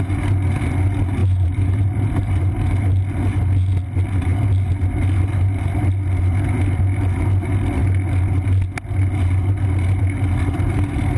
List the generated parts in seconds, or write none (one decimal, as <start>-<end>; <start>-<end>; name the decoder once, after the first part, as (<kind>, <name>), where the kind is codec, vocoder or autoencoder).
1.2-2.5 (vocoder, BigVGAN v2)